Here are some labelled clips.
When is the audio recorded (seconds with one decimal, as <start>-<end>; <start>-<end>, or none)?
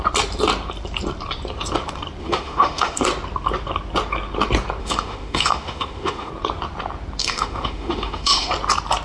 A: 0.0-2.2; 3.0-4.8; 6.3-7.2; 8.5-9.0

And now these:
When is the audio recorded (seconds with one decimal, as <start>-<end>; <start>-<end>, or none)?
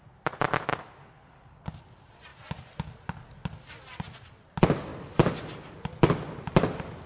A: 0.0-1.0; 1.7-7.1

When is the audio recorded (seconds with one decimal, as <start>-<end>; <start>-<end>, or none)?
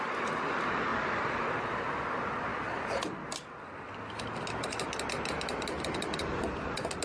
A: 0.0-7.0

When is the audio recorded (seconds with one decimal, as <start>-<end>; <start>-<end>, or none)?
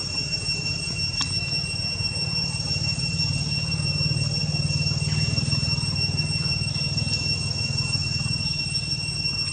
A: 0.0-9.5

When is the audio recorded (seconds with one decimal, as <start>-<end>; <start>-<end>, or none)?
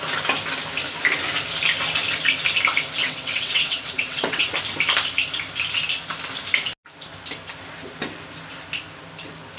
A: 0.0-3.0; 4.5-9.6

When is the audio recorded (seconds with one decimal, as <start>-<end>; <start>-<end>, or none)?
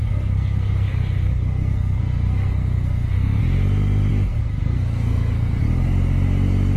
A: 3.4-4.1; 5.6-6.8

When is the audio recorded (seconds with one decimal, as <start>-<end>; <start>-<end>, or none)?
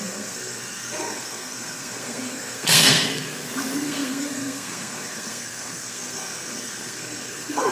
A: none